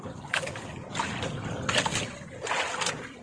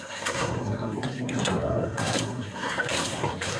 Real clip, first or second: first